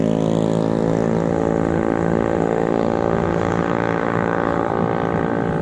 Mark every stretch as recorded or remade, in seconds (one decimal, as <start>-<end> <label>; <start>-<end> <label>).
0.0-1.3 recorded; 1.3-4.7 remade; 4.7-5.6 recorded